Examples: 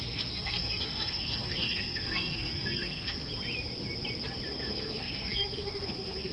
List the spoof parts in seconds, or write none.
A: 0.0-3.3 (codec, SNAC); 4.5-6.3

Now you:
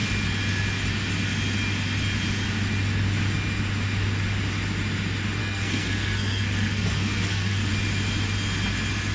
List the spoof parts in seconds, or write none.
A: 5.4-7.7 (codec, SNAC)

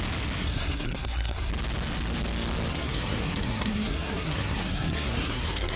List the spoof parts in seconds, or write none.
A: 0.4-1.5 (codec, SNAC); 2.7-5.8

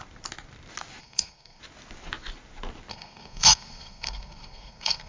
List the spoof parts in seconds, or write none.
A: 1.0-1.6 (codec, SNAC); 2.9-5.1